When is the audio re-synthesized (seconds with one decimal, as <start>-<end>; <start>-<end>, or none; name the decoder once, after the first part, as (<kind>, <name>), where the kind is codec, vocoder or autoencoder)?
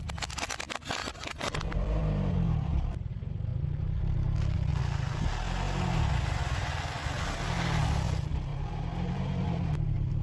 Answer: 1.0-2.0 (vocoder, BigVGAN v2); 3.5-4.0; 8.5-10.2